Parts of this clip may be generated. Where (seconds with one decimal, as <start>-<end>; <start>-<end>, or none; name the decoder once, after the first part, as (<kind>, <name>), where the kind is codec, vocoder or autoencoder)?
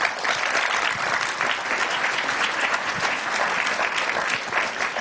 1.9-3.2 (vocoder, Vocos)